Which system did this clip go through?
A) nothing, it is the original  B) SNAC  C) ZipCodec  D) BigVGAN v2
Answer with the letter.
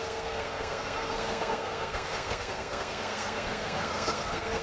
B